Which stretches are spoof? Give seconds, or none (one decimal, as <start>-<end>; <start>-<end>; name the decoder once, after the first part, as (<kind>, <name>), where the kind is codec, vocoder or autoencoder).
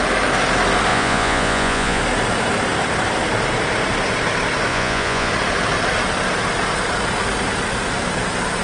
0.9-2.0 (vocoder, Vocos); 4.7-5.3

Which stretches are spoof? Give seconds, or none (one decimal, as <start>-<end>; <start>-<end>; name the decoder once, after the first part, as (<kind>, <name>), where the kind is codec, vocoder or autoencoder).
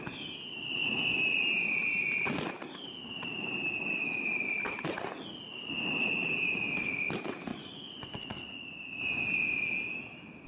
7.5-9.0 (vocoder, Vocos)